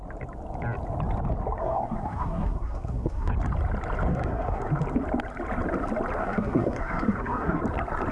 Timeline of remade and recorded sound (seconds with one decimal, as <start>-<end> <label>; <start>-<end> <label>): 0.0-1.6 recorded; 1.6-3.3 remade; 3.3-4.1 recorded; 4.1-4.7 remade; 4.7-6.2 recorded; 6.2-7.6 remade; 7.6-8.1 recorded